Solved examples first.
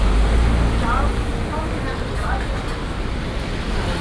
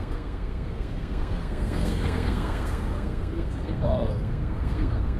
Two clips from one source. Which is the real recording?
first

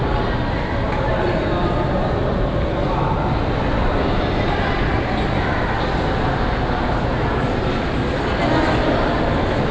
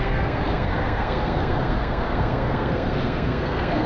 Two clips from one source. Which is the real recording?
first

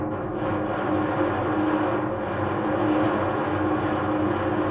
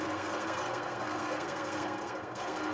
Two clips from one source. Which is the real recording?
first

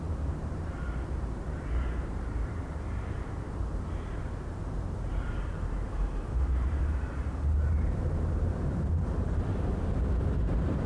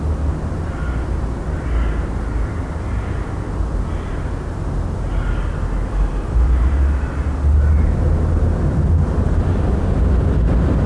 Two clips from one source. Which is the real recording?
second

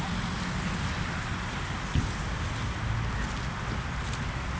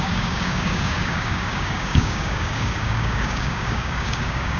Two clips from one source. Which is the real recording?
first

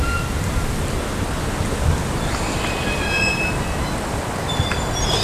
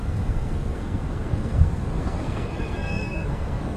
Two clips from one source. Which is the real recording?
first